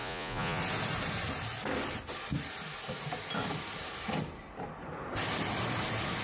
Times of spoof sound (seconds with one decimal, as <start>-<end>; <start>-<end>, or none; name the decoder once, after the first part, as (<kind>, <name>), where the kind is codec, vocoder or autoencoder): 0.0-0.6 (vocoder, Vocos)